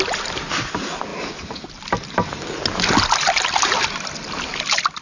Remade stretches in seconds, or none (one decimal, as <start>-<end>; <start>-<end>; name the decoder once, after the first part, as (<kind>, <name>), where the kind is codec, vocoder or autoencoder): none